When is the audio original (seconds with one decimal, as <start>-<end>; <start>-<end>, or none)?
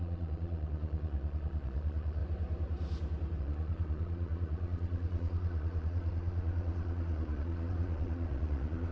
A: 2.2-3.4